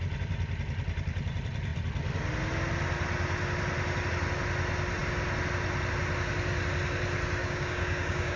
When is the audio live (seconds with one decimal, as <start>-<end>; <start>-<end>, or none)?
0.0-7.4